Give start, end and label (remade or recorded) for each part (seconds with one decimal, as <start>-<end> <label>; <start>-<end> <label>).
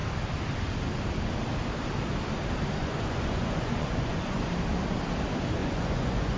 0.0-2.8 recorded; 2.8-4.5 remade; 4.5-5.6 recorded; 5.6-6.4 remade